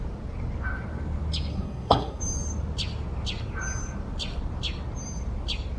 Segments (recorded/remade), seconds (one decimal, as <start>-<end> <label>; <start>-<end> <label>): 0.0-1.5 recorded; 1.5-2.2 remade; 2.2-5.8 recorded